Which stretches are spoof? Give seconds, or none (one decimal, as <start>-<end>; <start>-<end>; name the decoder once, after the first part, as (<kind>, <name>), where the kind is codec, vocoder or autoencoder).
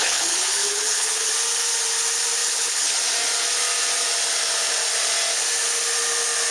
0.0-1.3 (codec, HILCodec); 2.4-3.0